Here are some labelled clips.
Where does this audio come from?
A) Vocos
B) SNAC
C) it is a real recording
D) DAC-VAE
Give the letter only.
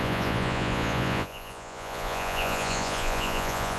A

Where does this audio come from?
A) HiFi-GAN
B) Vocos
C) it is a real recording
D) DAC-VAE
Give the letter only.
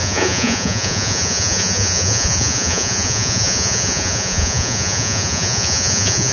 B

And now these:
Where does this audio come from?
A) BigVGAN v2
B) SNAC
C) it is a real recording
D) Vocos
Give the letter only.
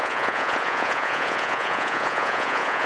D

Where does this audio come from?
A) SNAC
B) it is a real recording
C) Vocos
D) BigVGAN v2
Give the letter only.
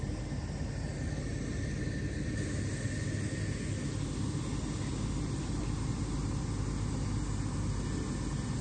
B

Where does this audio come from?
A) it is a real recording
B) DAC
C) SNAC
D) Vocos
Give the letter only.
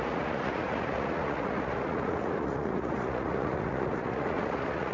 D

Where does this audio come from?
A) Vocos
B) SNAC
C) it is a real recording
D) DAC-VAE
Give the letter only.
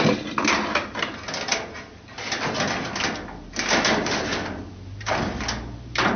C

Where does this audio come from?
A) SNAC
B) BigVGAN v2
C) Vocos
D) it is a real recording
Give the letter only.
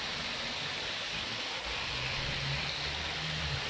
D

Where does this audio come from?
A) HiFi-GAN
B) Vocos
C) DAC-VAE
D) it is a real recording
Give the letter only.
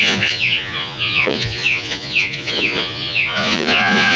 B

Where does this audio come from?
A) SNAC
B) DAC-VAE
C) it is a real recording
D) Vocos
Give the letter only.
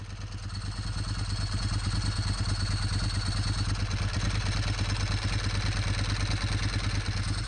C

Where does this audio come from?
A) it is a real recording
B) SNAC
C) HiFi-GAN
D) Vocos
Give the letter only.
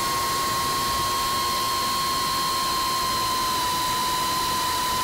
A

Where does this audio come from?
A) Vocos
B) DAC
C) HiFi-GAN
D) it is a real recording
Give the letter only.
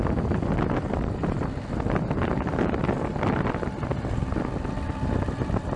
D